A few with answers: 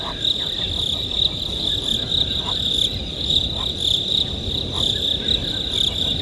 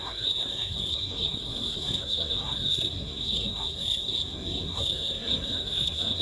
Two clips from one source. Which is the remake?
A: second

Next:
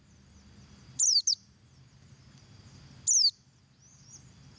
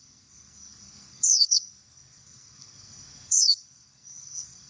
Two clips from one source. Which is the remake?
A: second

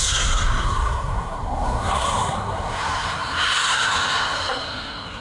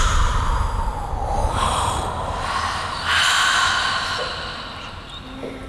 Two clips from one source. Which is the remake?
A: first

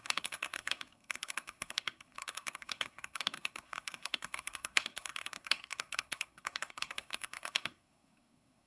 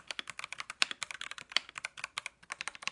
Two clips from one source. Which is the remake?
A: first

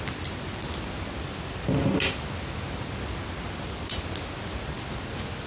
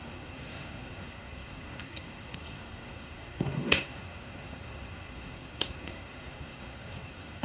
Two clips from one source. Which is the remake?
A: second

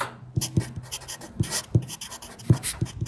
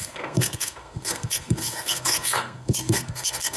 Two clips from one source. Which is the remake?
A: second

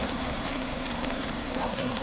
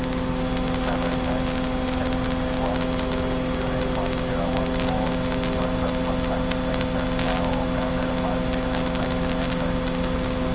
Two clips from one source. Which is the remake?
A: first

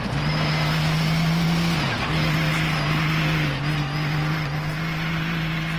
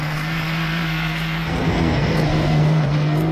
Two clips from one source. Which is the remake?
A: second